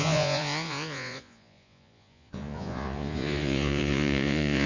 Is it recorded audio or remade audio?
remade